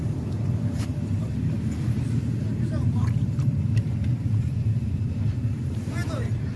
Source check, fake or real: fake